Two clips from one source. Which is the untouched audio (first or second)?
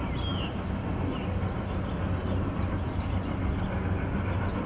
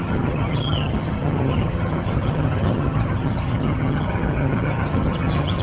first